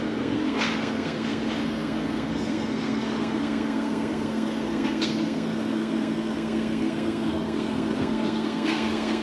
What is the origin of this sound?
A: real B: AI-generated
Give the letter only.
B